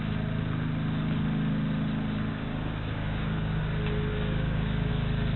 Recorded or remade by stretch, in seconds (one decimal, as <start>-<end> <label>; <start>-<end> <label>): 0.0-2.3 recorded; 2.3-3.6 remade; 3.6-4.1 recorded; 4.1-4.9 remade; 4.9-5.4 recorded